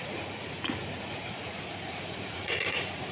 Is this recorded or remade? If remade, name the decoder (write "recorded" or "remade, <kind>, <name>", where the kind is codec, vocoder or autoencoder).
remade, vocoder, Vocos